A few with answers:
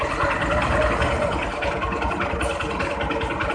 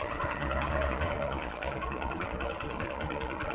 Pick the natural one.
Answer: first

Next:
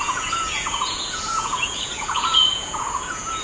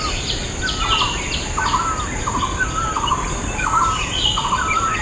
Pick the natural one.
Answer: second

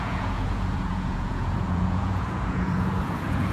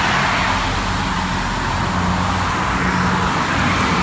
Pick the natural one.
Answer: second